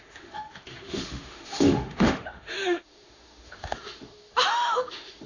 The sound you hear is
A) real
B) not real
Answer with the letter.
B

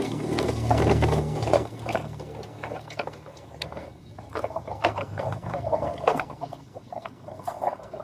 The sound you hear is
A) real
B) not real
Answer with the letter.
B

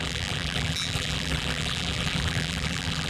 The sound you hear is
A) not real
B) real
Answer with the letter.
A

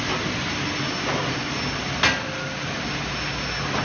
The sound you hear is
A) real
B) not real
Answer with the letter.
A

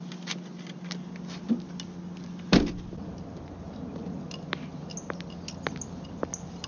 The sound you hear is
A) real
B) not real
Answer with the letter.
A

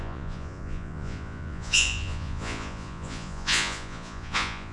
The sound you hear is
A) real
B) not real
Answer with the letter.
B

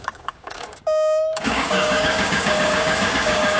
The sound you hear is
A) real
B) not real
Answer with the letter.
B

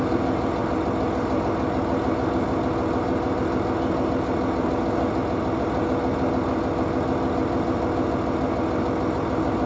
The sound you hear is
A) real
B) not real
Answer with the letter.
A